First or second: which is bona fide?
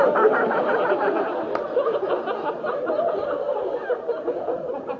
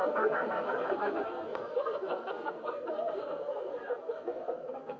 first